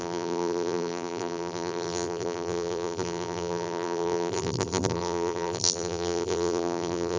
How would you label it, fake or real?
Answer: fake